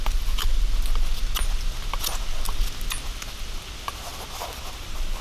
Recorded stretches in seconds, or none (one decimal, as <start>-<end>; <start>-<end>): 0.0-5.2